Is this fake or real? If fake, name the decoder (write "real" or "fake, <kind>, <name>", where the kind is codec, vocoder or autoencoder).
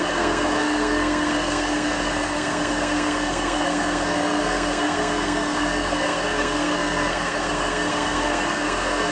fake, codec, SNAC